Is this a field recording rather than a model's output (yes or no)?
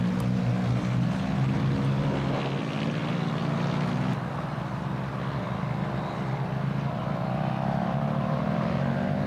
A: yes